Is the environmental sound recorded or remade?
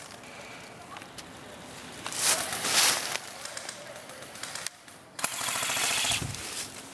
recorded